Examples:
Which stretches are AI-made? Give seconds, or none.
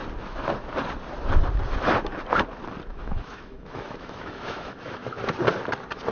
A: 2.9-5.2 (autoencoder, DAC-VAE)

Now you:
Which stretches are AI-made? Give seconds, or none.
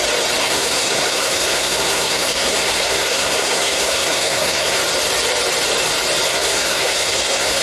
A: 0.4-4.8 (codec, SNAC); 6.3-7.6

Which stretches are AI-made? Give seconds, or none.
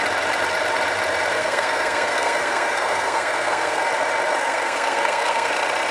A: 1.3-3.9 (codec, SNAC); 4.4-5.5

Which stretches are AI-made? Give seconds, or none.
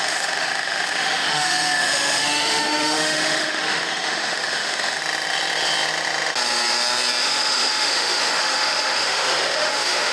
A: 0.0-5.0 (autoencoder, DAC-VAE); 7.2-10.1